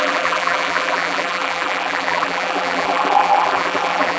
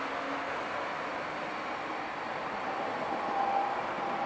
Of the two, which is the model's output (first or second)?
first